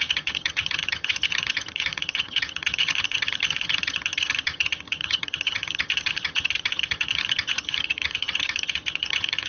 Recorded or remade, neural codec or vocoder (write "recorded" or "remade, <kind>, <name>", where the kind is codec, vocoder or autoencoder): remade, vocoder, HiFi-GAN